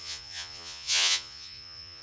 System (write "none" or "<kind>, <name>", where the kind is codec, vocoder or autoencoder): vocoder, Vocos